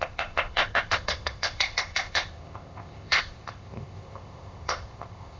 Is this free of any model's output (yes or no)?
no